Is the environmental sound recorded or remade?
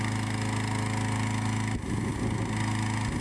recorded